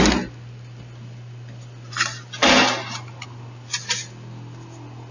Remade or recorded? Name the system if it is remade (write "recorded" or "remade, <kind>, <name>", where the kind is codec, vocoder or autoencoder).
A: recorded